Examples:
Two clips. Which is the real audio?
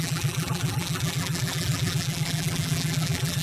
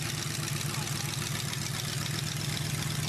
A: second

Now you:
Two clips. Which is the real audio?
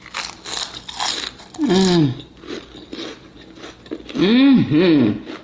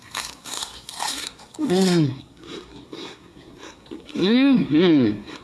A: first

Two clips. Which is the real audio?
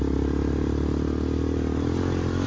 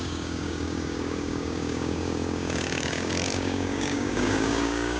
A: first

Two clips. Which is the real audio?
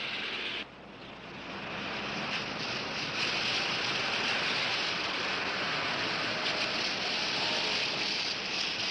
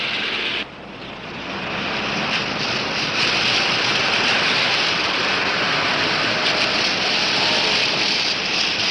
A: first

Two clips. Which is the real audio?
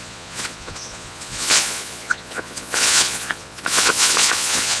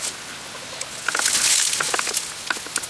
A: second